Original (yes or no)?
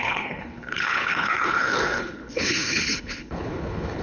no